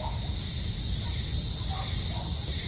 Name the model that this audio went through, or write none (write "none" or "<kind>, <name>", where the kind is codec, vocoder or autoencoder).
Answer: none